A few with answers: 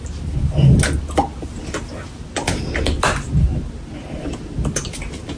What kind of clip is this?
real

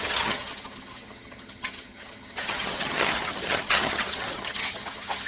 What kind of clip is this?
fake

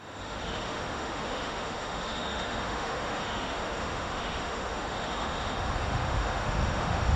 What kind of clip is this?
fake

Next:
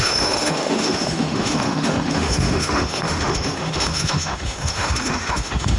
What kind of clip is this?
fake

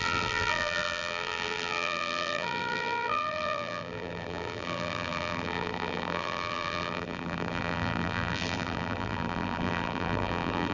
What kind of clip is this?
fake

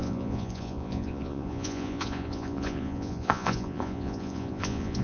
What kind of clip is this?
fake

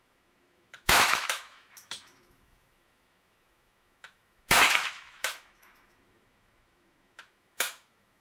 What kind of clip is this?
fake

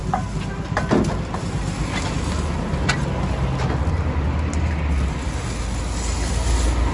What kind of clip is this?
real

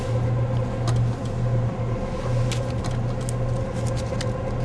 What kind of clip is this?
real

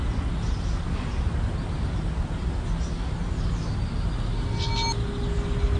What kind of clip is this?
real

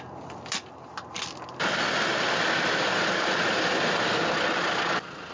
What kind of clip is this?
real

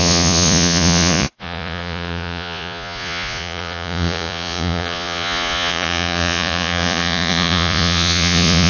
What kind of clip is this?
fake